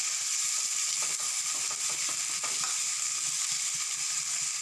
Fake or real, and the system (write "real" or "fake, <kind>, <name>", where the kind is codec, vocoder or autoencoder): real